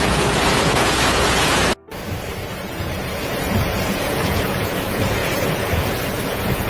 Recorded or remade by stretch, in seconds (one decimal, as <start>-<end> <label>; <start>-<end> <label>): 0.0-1.6 remade; 1.6-2.3 recorded; 2.3-6.7 remade